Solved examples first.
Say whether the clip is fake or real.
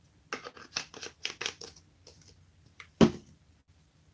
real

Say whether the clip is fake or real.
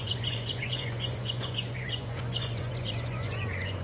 fake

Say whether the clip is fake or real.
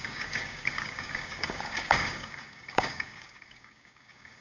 fake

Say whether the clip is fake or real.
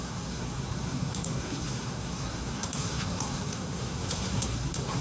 fake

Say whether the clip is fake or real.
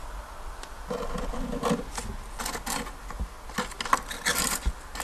real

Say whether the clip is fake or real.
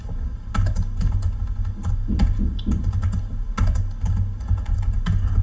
real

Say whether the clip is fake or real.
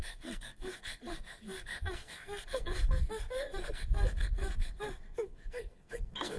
fake